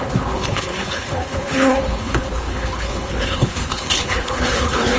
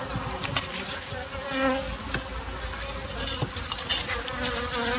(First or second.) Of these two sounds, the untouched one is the second